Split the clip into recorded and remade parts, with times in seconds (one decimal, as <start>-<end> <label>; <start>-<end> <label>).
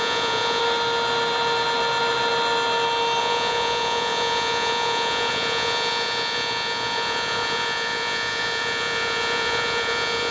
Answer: 0.0-0.6 remade; 0.6-3.2 recorded; 3.2-10.3 remade